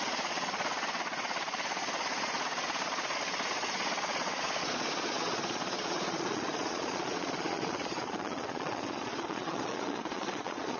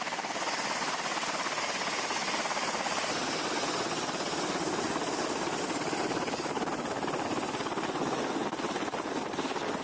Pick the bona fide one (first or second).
second